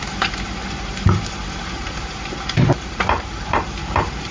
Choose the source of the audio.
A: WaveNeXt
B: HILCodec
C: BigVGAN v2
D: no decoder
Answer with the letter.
C